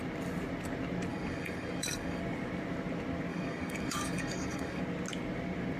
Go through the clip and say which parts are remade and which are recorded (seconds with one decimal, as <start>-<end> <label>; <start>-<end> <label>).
0.0-1.1 recorded; 1.1-2.2 remade; 2.2-3.3 recorded; 3.3-4.8 remade; 4.8-5.8 recorded